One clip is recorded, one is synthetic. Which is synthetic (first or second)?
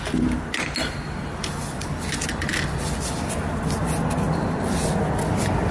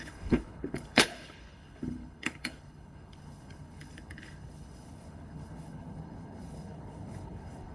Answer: second